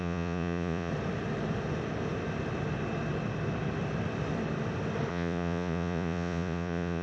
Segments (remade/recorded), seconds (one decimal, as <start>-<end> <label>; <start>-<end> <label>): 0.0-0.9 remade; 0.9-5.1 recorded; 5.1-7.0 remade